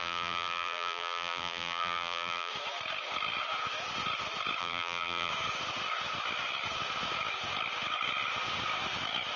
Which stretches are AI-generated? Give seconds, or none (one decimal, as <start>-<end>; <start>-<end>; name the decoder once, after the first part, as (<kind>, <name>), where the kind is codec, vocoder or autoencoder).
0.0-2.5 (vocoder, BigVGAN v2); 4.6-5.3